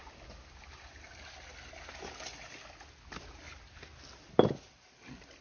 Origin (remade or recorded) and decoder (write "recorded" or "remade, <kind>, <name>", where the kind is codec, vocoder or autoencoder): recorded